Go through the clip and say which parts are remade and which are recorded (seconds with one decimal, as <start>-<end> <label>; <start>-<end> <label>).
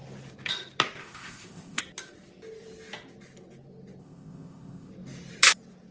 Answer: 0.0-1.0 recorded; 1.0-1.8 remade; 1.8-4.0 recorded; 4.0-4.9 remade; 4.9-5.9 recorded